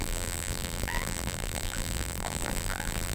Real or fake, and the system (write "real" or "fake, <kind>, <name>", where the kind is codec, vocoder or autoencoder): fake, vocoder, BigVGAN v2